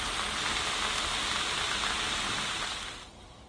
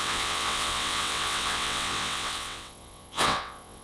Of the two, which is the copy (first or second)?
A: second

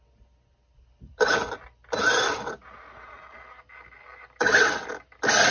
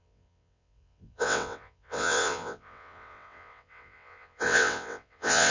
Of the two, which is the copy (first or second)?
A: second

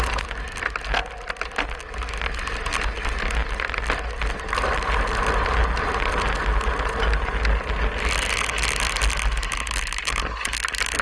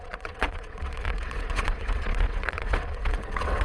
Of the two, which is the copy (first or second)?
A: second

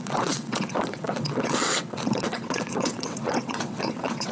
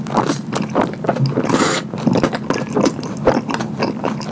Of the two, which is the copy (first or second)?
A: first